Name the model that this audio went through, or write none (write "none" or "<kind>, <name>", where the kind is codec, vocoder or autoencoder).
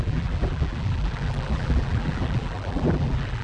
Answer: vocoder, BigVGAN v2